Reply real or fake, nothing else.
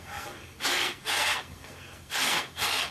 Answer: fake